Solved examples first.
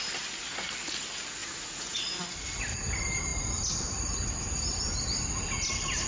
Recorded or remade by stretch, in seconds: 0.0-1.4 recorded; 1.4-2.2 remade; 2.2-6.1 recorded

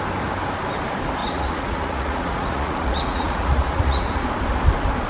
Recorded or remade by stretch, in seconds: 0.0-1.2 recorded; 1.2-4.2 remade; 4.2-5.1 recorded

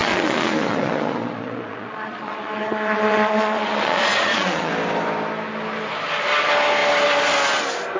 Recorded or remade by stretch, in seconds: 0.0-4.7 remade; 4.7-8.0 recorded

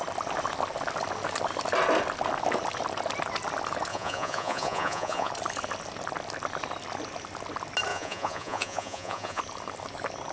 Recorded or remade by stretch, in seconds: 0.0-3.9 recorded; 3.9-5.3 remade; 5.3-7.9 recorded; 7.9-9.4 remade; 9.4-10.3 recorded

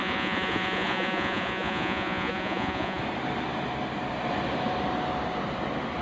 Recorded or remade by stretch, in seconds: 0.0-3.0 remade; 3.0-6.0 recorded